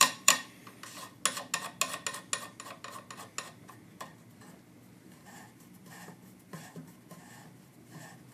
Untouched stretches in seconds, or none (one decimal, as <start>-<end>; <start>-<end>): 0.6-4.9